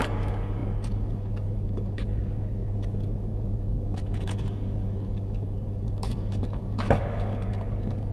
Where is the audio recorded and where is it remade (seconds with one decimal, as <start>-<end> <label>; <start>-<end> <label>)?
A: 0.0-8.1 remade